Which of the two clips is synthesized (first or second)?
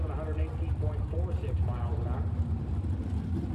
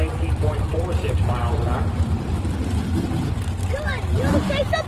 second